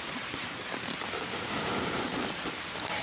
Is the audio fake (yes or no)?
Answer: no